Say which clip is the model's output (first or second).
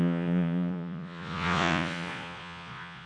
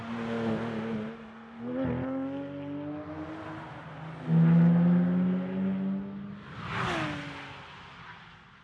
first